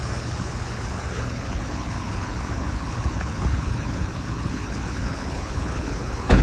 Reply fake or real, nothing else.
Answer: fake